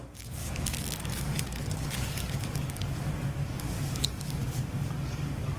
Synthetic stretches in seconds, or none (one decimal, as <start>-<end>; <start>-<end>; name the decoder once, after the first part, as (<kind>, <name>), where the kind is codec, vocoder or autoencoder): 0.0-5.6 (codec, DAC)